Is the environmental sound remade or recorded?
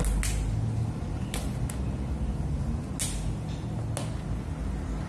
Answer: recorded